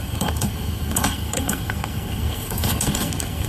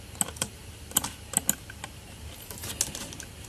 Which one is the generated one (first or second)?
first